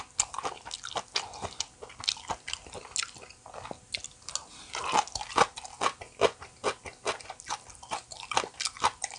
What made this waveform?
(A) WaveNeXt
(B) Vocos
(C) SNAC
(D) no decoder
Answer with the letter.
D